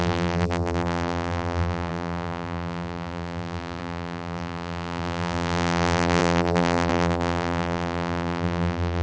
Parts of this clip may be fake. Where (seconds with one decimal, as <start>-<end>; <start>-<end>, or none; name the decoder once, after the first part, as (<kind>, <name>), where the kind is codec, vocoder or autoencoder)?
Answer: 0.0-9.0 (vocoder, BigVGAN v2)